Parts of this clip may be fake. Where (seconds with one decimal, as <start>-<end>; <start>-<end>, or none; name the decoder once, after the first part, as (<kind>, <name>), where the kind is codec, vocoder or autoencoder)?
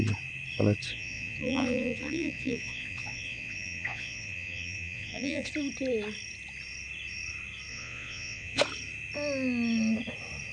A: 0.9-5.5 (vocoder, Vocos); 7.7-8.6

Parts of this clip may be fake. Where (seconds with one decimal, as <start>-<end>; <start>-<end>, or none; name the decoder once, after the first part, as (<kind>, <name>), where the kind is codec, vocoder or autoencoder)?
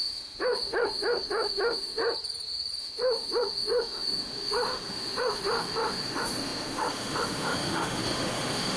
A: 0.0-2.0 (autoencoder, DAC-VAE); 2.8-8.8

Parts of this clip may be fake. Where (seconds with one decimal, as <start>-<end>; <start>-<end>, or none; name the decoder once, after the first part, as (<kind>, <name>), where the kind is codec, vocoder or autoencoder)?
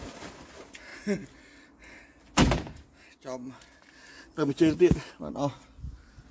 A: none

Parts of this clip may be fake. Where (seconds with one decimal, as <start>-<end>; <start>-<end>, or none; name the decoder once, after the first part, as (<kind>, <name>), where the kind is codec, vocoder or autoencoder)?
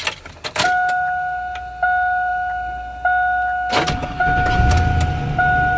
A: none